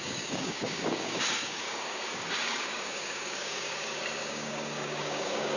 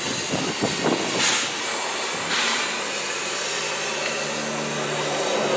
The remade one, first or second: first